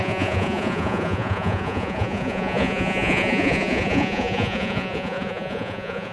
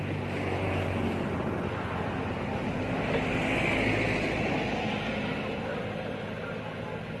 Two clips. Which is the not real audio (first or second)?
first